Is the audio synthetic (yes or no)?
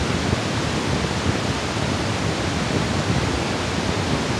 no